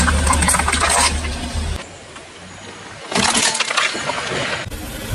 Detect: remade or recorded recorded